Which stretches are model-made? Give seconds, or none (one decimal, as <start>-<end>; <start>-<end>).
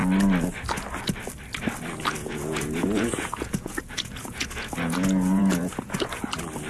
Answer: 2.2-6.2